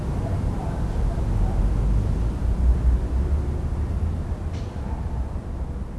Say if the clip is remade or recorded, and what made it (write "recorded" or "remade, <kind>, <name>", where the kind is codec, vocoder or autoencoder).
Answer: recorded